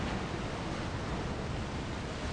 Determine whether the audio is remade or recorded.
recorded